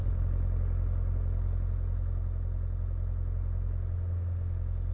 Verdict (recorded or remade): recorded